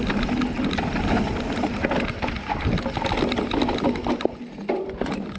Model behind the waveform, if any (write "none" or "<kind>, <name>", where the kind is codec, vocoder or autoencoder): none